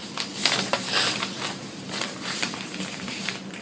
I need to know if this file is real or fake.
real